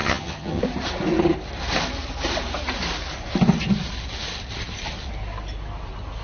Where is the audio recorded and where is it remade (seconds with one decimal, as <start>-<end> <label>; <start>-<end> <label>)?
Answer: 0.0-0.6 remade; 0.6-6.2 recorded